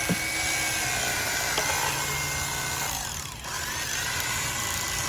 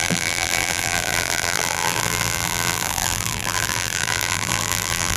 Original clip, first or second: first